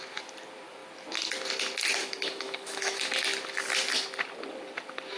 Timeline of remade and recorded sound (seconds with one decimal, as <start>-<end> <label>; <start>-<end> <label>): 0.0-2.0 recorded; 2.0-3.0 remade; 3.0-5.2 recorded